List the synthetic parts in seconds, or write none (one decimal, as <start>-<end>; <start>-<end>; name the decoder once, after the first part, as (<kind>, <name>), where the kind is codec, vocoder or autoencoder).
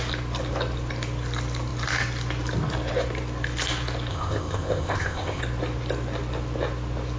4.1-5.4 (codec, ZipCodec)